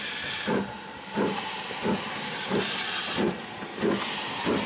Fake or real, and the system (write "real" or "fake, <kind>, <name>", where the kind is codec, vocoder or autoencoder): real